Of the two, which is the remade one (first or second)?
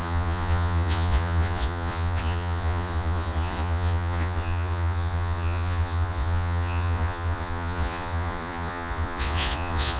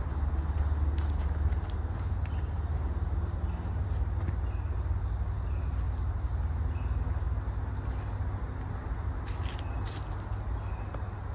first